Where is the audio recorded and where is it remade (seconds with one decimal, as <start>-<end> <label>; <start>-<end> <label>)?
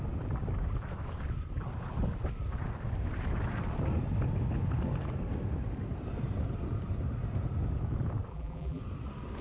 0.0-8.3 recorded; 8.3-8.8 remade; 8.8-9.4 recorded